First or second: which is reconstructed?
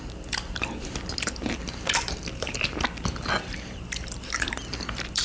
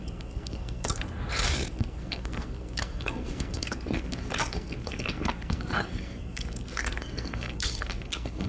second